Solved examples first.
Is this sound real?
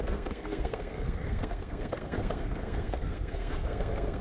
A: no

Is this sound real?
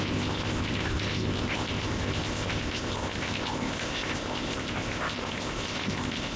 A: no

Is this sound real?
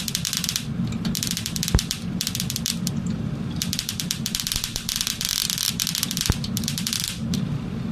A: no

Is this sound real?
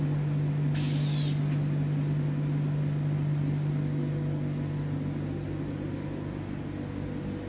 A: yes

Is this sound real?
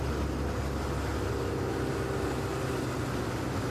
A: yes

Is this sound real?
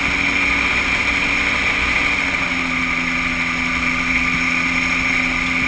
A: yes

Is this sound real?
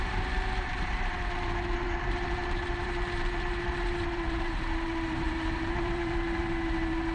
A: no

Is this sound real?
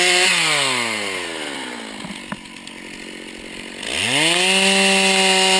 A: yes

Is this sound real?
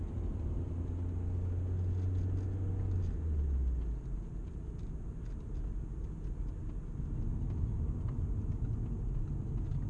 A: yes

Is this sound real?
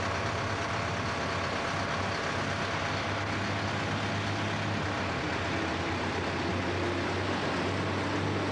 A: yes